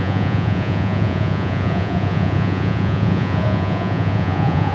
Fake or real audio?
fake